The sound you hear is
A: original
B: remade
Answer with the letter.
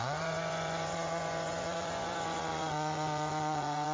B